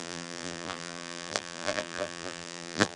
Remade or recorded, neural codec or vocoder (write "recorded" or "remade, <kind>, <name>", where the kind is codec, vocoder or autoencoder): remade, vocoder, BigVGAN v2